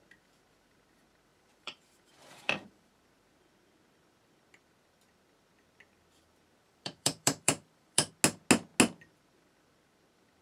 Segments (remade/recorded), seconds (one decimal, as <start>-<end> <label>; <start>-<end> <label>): 0.0-1.3 recorded; 1.3-2.9 remade; 2.9-6.6 recorded; 6.6-8.1 remade; 8.1-10.4 recorded